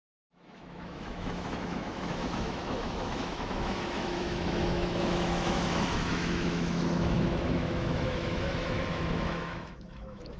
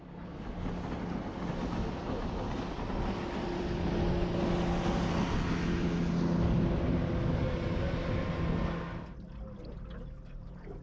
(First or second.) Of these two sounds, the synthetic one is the first